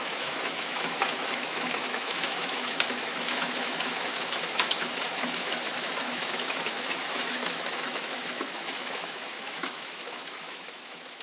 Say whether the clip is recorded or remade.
remade